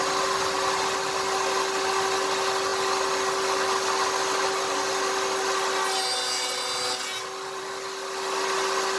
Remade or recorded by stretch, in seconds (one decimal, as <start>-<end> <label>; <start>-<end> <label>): 0.0-9.0 recorded